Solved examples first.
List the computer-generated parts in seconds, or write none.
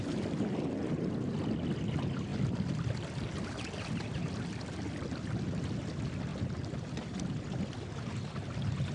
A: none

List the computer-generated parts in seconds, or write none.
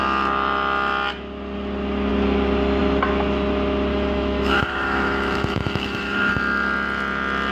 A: 3.9-6.3 (autoencoder, DAC-VAE)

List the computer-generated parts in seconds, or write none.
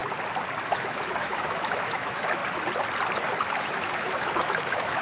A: 0.7-2.4 (autoencoder, DAC-VAE); 3.5-5.0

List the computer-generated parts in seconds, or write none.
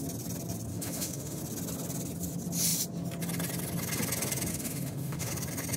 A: 0.7-1.4 (autoencoder, DAC-VAE); 4.5-5.3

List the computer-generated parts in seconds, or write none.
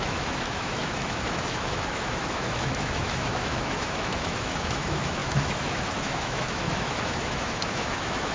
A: 0.0-8.3 (autoencoder, DAC-VAE)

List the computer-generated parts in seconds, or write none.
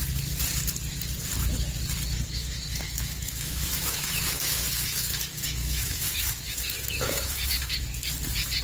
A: 2.4-7.5 (autoencoder, DAC-VAE)